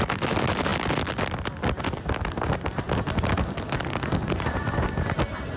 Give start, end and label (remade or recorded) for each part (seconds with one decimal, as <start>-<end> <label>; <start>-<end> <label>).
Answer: 0.0-5.6 recorded